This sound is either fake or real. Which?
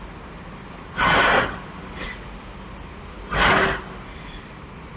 real